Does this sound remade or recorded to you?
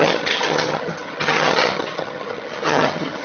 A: remade